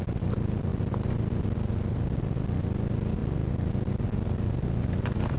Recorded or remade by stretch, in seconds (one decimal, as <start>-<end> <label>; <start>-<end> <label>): 0.0-5.4 recorded